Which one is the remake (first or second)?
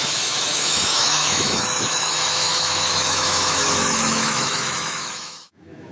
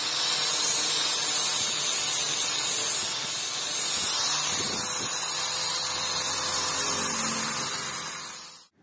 first